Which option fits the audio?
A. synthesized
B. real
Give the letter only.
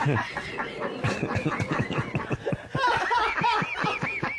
B